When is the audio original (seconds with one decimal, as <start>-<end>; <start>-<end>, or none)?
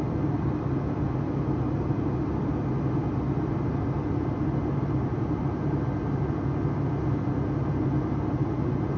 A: 0.0-9.0